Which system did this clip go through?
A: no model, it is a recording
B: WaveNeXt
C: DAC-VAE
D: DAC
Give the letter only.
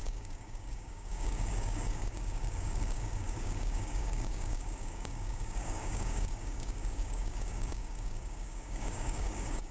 D